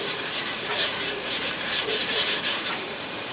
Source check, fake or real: fake